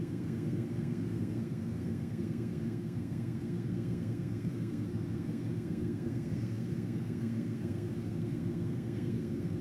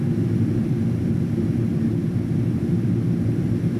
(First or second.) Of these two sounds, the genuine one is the second